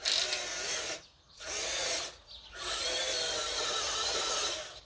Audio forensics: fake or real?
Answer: real